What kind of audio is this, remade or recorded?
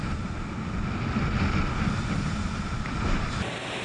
recorded